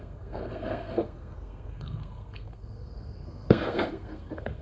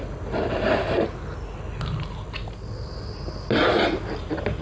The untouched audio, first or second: second